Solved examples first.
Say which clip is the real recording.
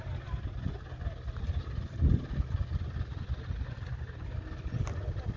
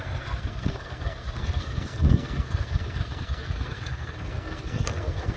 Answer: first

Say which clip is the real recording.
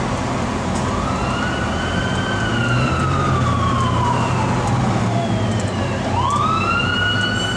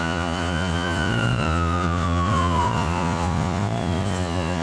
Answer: first